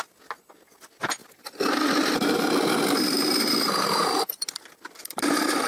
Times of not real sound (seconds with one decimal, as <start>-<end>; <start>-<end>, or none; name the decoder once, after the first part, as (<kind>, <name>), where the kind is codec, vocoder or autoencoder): 1.2-4.5 (vocoder, BigVGAN v2); 5.0-5.7